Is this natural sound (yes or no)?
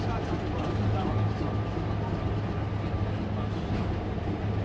yes